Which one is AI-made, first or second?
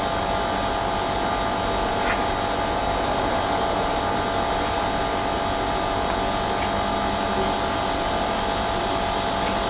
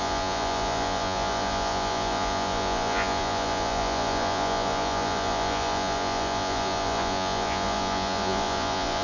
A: second